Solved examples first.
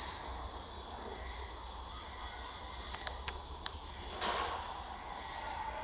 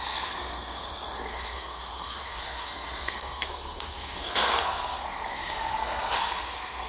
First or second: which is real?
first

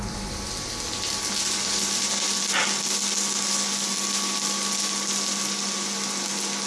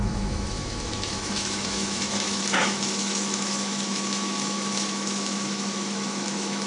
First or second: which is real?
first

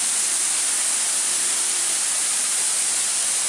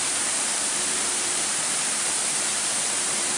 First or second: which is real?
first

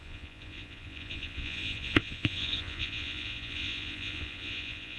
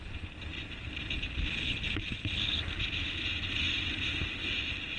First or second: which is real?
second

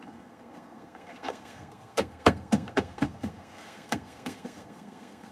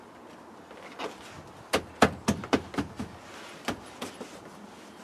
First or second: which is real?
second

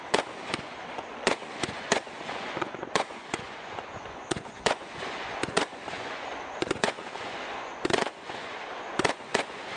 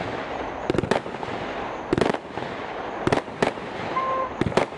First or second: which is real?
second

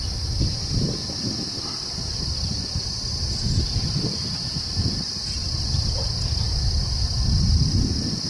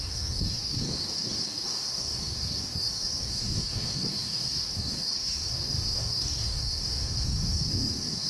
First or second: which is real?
first